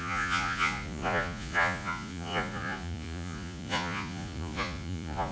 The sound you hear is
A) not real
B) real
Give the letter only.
A